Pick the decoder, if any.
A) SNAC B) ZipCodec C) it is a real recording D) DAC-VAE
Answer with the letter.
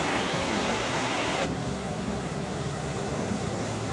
A